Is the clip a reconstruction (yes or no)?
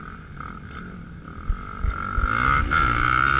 no